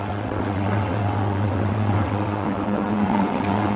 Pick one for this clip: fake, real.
fake